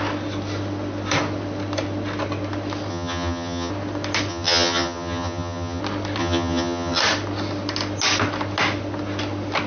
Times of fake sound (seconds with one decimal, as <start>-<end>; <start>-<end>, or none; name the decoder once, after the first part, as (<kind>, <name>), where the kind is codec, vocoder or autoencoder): 2.9-3.7 (vocoder, HiFi-GAN); 4.3-5.8; 6.2-7.0